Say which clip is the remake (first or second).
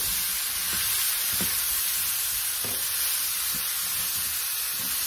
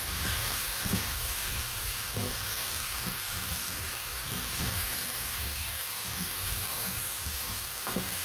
second